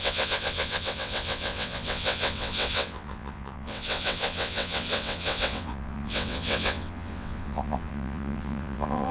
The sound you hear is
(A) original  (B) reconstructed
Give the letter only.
B